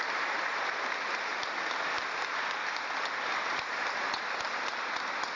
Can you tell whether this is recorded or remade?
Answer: recorded